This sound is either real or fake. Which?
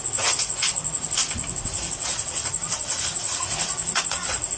fake